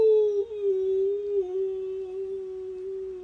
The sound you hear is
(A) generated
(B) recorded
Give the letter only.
B